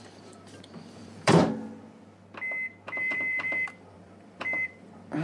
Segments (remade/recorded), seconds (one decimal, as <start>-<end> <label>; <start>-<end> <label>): 0.0-1.4 remade; 1.4-3.0 recorded; 3.0-5.2 remade